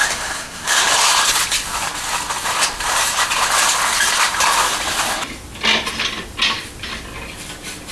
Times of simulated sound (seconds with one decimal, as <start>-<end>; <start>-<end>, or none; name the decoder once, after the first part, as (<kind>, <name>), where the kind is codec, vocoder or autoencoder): 0.0-0.8 (codec, SNAC)